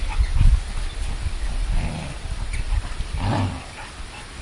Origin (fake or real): real